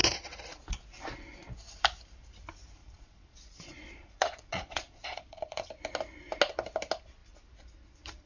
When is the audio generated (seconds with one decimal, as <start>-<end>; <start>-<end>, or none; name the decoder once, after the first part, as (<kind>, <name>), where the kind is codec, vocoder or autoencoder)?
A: 0.0-0.8 (vocoder, Vocos); 2.8-5.7